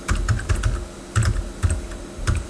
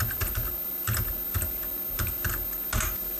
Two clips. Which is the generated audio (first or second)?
first